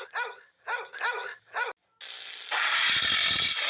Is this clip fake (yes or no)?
no